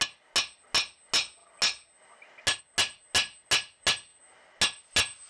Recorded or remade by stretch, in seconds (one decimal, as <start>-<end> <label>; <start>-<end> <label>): 0.0-5.3 recorded